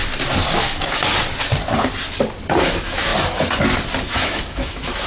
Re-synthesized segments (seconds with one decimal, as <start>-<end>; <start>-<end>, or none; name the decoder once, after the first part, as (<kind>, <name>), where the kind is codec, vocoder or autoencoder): 0.6-1.0 (autoencoder, DAC-VAE); 2.6-3.1; 4.1-5.1